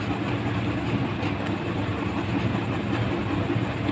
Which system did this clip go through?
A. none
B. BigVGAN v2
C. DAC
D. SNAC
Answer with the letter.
A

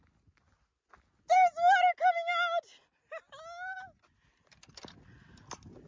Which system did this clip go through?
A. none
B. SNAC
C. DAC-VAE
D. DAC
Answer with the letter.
A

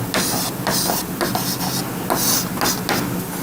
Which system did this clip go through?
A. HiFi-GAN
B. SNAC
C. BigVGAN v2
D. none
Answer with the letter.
D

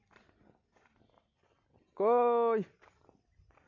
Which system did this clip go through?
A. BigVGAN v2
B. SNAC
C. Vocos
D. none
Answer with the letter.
D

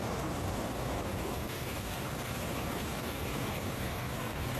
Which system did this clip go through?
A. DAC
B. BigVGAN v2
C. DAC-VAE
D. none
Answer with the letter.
A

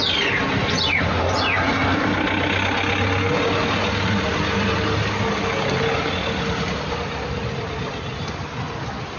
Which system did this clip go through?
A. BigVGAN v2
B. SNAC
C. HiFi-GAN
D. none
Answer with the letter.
D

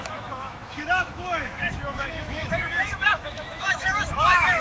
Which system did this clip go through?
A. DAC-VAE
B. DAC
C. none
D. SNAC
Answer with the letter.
A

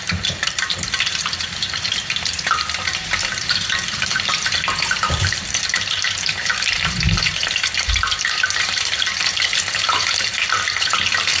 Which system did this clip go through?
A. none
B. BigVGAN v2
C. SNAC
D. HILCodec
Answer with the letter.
B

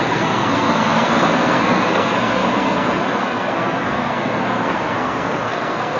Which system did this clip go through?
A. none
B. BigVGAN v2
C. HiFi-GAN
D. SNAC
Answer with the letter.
D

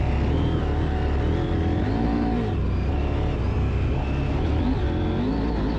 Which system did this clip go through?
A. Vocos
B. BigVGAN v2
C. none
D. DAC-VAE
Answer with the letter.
C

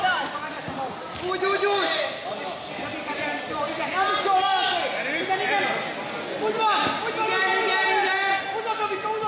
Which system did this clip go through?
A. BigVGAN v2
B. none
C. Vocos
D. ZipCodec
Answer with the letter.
B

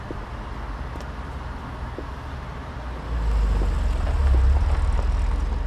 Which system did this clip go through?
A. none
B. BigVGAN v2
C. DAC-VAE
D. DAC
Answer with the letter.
A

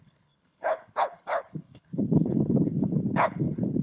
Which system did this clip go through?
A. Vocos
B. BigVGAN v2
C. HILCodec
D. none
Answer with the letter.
C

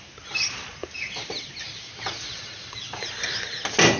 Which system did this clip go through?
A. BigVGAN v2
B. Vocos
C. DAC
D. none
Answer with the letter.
D